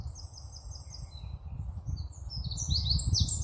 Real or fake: real